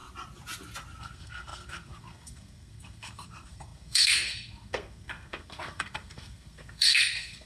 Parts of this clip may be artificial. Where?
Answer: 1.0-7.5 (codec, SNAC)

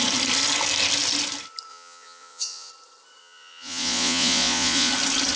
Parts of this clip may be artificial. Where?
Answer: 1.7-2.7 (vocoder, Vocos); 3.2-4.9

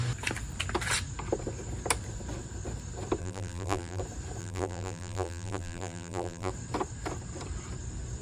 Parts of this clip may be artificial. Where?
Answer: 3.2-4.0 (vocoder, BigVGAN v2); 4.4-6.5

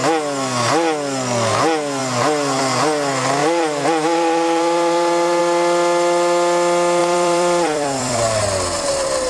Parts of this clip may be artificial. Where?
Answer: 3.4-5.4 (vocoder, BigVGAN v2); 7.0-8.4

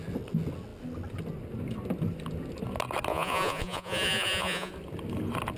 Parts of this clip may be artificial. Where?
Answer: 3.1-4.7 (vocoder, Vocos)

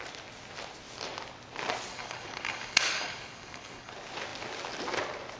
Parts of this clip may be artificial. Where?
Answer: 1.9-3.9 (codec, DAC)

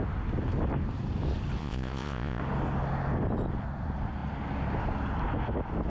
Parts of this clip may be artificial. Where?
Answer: 1.6-2.4 (vocoder, Vocos)